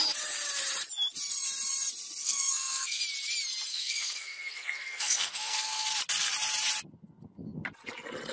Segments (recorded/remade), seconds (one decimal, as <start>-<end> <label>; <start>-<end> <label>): 0.0-2.2 recorded; 2.2-3.0 remade; 3.0-3.7 recorded; 3.7-5.9 remade; 5.9-8.3 recorded